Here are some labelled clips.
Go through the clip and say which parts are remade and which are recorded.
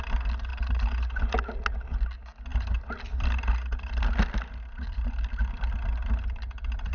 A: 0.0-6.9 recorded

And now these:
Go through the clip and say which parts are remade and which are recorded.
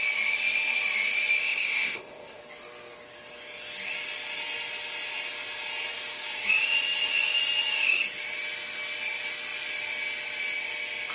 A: 0.0-1.4 recorded; 1.4-2.4 remade; 2.4-11.1 recorded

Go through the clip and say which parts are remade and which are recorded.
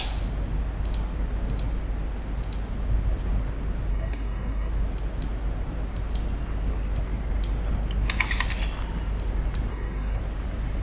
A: 0.0-3.9 recorded; 3.9-4.7 remade; 4.7-9.7 recorded; 9.7-10.2 remade; 10.2-10.8 recorded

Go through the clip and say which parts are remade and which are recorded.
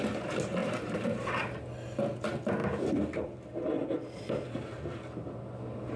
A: 0.0-0.6 recorded; 0.6-1.6 remade; 1.6-2.6 recorded; 2.6-3.2 remade; 3.2-6.0 recorded